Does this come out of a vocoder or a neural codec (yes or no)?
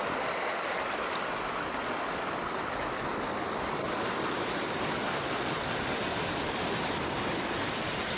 no